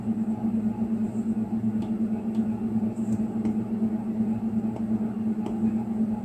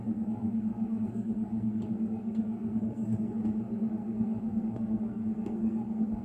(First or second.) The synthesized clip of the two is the second